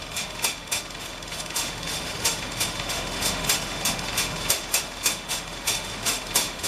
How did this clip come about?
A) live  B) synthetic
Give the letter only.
B